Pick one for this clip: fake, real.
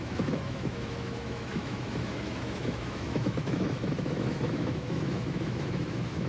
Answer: fake